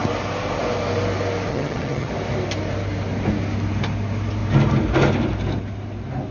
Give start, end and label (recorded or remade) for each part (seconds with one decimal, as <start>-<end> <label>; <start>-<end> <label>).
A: 0.0-1.5 recorded; 1.5-2.1 remade; 2.1-6.3 recorded